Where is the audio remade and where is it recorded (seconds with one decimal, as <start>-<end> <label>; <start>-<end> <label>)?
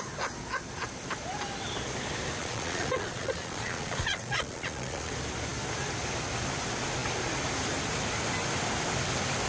0.0-2.4 recorded; 2.4-5.1 remade; 5.1-9.5 recorded